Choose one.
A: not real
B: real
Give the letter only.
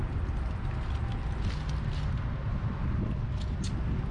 B